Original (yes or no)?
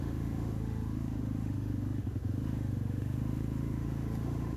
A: no